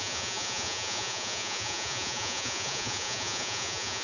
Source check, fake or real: fake